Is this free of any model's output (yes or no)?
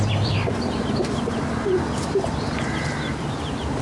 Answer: no